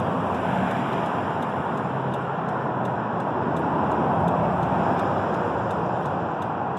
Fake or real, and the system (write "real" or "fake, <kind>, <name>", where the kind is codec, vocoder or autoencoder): real